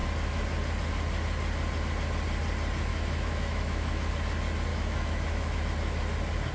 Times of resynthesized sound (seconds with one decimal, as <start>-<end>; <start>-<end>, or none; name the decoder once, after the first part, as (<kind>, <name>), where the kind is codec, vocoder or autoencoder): 2.9-4.1 (autoencoder, DAC-VAE); 4.7-5.6